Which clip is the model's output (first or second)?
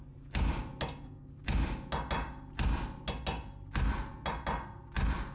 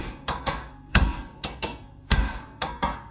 second